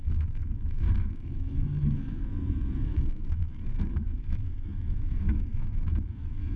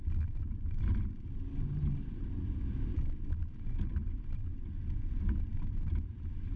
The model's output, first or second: first